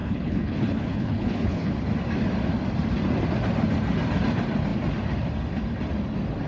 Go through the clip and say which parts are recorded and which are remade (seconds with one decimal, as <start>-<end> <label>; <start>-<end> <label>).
0.0-1.7 remade; 1.7-6.5 recorded

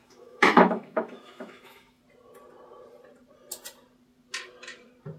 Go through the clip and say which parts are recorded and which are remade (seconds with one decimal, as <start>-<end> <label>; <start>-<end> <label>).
0.0-2.0 remade; 2.0-5.2 recorded

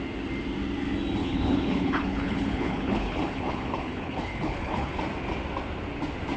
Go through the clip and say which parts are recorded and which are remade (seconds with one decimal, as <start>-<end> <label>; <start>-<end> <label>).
0.0-1.2 recorded; 1.2-5.0 remade; 5.0-6.4 recorded

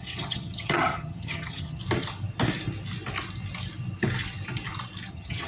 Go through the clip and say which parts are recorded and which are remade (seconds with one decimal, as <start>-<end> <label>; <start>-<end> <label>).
0.0-1.8 remade; 1.8-5.1 recorded; 5.1-5.5 remade

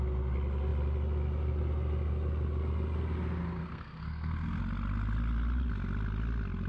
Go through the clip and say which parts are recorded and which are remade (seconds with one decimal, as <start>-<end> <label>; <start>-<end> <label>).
0.0-3.6 recorded; 3.6-4.6 remade; 4.6-6.7 recorded

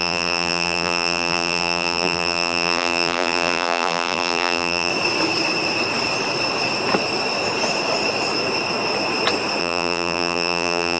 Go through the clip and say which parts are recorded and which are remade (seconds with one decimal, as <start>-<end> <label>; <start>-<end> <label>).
0.0-4.9 remade; 4.9-9.6 recorded; 9.6-11.0 remade

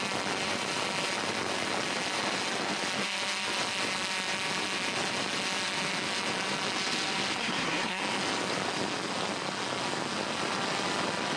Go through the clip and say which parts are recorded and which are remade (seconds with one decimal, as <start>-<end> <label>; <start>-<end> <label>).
0.0-7.4 recorded; 7.4-8.0 remade; 8.0-11.4 recorded

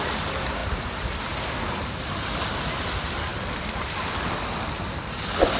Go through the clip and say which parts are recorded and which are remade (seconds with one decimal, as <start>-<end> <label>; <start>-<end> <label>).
0.0-3.3 recorded; 3.3-4.4 remade; 4.4-5.6 recorded